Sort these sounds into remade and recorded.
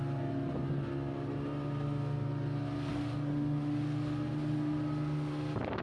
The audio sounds recorded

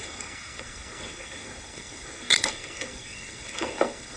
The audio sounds remade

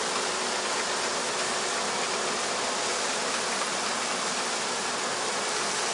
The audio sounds recorded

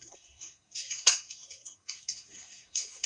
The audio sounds remade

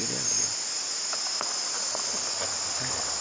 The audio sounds recorded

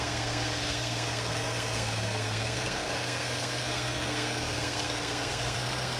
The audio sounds remade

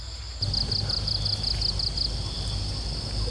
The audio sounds recorded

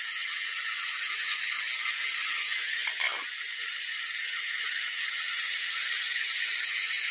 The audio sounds recorded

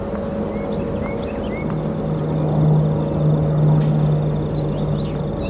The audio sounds recorded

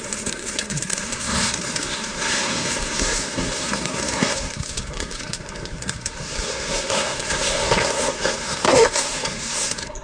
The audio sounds remade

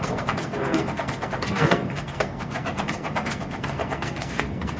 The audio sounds remade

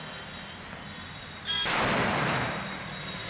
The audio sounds recorded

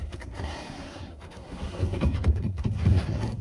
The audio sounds remade